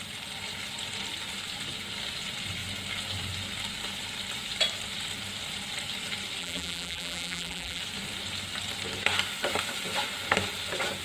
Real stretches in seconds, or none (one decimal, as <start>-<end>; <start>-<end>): 0.0-6.4; 7.8-11.0